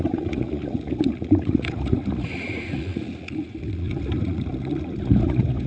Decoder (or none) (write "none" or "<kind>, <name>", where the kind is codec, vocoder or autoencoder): vocoder, Vocos